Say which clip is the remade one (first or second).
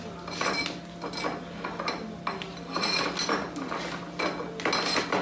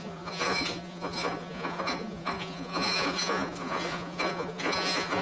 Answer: second